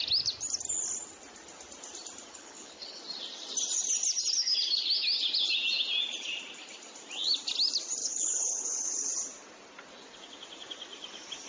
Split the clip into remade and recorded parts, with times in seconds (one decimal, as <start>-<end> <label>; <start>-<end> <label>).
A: 0.0-2.3 recorded; 2.3-3.0 remade; 3.0-8.0 recorded; 8.0-9.1 remade; 9.1-11.5 recorded